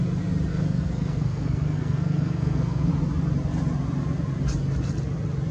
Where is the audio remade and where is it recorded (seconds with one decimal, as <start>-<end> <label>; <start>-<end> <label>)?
0.0-0.5 recorded; 0.5-2.9 remade; 2.9-5.5 recorded